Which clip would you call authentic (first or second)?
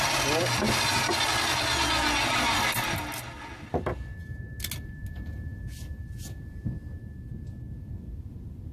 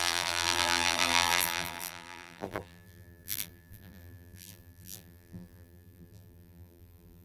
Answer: first